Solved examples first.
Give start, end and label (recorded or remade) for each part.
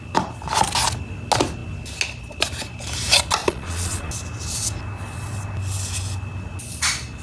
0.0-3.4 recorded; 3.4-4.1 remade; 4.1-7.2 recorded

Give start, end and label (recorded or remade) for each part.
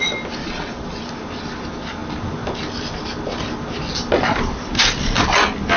0.0-0.4 recorded; 0.4-1.0 remade; 1.0-5.8 recorded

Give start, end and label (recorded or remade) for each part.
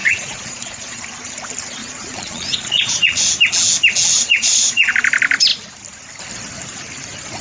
0.0-1.0 remade; 1.0-1.8 recorded; 1.8-3.3 remade; 3.3-4.1 recorded; 4.1-4.9 remade; 4.9-7.4 recorded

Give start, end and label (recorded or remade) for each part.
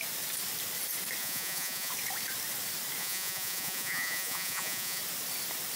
0.0-1.2 recorded; 1.2-1.9 remade; 1.9-3.0 recorded; 3.0-5.0 remade; 5.0-5.8 recorded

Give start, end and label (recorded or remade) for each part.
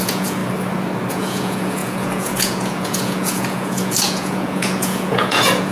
0.0-0.4 remade; 0.4-1.1 recorded; 1.1-5.7 remade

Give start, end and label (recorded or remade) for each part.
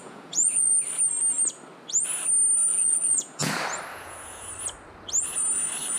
0.0-0.7 remade; 0.7-2.7 recorded; 2.7-3.5 remade; 3.5-3.9 recorded; 3.9-4.5 remade; 4.5-6.0 recorded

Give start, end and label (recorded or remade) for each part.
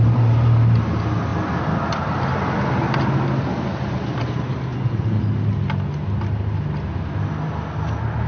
0.0-4.7 recorded; 4.7-5.2 remade; 5.2-8.3 recorded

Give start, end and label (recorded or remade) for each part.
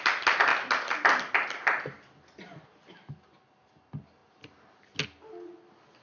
0.0-6.0 recorded